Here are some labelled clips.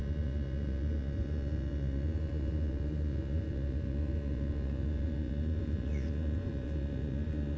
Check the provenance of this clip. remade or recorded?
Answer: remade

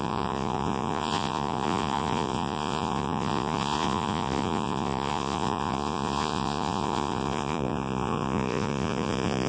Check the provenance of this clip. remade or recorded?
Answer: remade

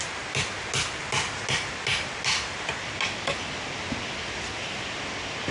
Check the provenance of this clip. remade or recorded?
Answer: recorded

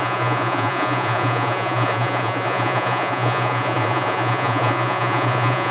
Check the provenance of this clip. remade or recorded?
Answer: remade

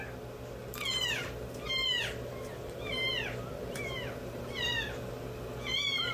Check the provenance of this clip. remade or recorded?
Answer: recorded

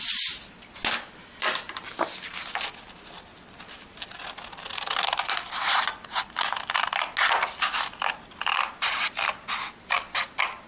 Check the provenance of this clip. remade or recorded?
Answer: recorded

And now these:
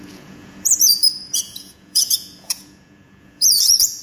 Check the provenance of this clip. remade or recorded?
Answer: remade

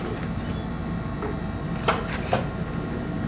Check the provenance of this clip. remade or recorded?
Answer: recorded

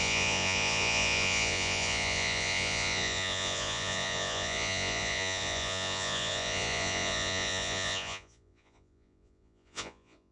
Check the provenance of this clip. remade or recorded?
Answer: remade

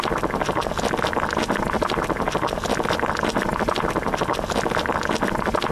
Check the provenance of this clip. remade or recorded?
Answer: recorded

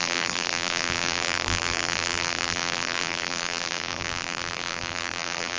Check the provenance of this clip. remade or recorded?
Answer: remade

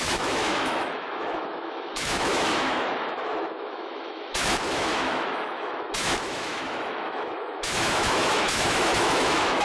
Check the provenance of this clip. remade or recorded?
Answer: remade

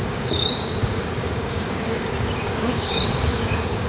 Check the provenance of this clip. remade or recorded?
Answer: remade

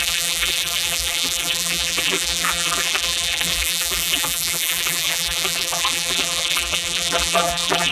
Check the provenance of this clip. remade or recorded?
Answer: remade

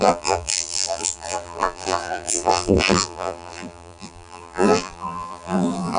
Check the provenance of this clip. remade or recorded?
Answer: remade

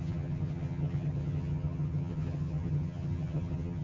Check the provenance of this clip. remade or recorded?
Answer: remade